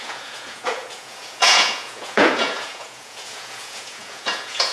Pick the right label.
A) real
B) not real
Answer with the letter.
B